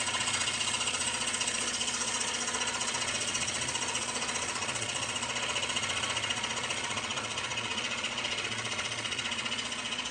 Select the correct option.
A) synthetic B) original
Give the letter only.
A